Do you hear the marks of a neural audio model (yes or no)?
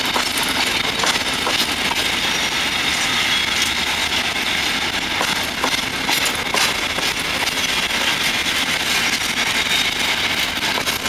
no